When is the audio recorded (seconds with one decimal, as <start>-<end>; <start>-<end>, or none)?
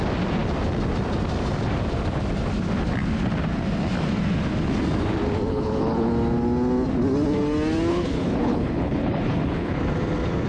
0.0-5.5; 6.1-7.9; 9.8-10.5